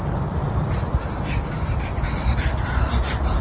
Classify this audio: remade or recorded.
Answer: recorded